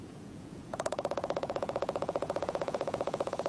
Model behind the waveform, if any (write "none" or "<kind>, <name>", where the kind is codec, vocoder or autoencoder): vocoder, Vocos